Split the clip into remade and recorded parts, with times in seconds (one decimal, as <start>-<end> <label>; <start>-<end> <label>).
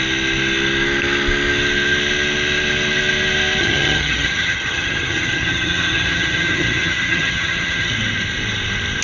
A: 0.0-3.6 recorded; 3.6-7.9 remade; 7.9-9.0 recorded